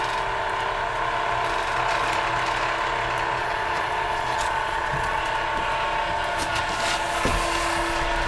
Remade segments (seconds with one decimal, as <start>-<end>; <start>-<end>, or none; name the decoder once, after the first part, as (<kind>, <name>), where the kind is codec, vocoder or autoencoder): 3.4-5.2 (vocoder, Vocos)